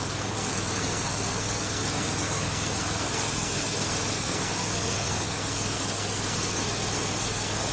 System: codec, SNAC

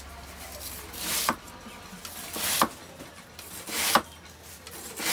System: none